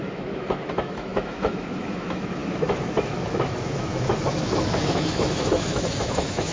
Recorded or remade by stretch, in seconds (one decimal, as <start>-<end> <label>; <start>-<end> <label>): 0.0-6.5 remade